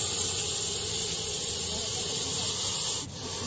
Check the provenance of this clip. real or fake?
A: real